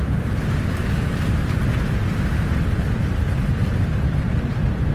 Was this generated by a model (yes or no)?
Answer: no